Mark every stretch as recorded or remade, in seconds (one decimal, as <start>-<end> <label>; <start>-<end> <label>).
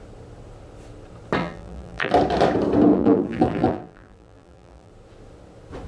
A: 0.0-1.4 recorded; 1.4-2.1 remade; 2.1-2.9 recorded; 2.9-4.9 remade; 4.9-5.9 recorded